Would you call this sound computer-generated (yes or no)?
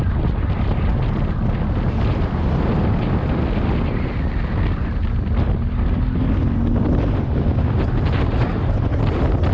no